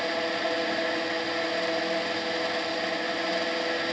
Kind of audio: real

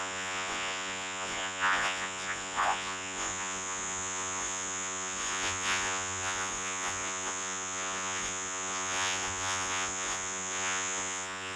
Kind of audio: fake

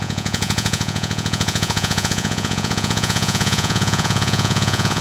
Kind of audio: fake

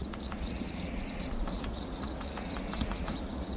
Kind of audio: fake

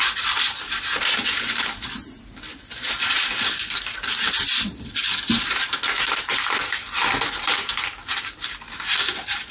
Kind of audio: real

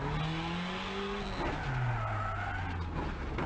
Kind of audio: real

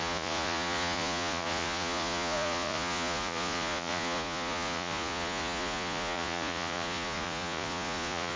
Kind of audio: fake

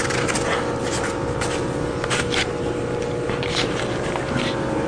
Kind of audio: real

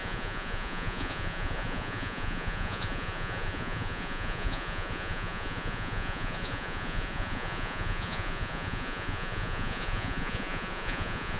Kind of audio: fake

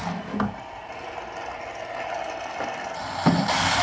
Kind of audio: real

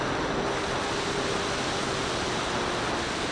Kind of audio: real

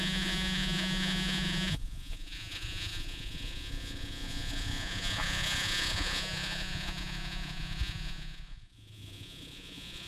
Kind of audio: fake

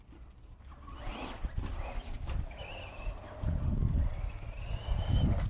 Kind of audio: real